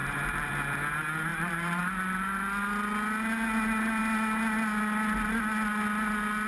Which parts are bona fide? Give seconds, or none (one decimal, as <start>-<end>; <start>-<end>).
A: 0.5-1.3; 1.8-6.5